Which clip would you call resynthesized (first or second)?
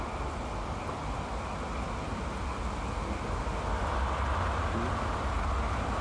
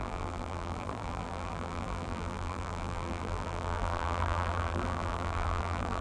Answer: second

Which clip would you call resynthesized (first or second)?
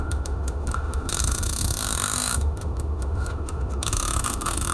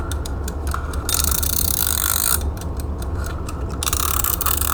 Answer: first